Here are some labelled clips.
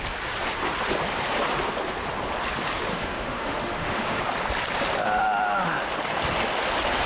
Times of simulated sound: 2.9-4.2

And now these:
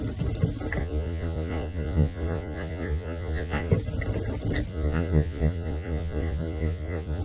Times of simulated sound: 0.8-3.7; 4.7-7.2

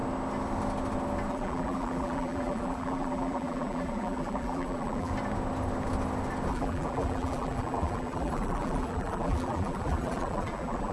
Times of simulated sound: 1.3-5.1; 6.5-10.9